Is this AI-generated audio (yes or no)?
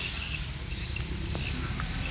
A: no